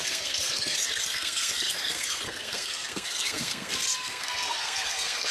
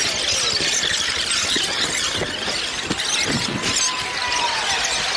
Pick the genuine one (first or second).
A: second